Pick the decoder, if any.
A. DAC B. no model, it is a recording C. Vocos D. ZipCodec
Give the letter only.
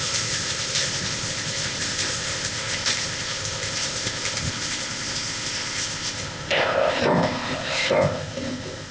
D